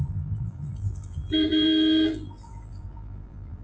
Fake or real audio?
fake